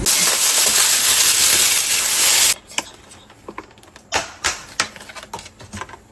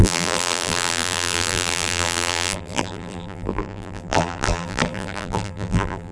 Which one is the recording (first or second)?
first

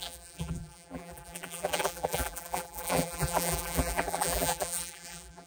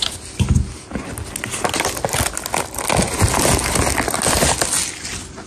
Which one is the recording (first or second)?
second